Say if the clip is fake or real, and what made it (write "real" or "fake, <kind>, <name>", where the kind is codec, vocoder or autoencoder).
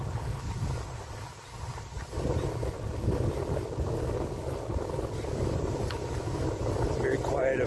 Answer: real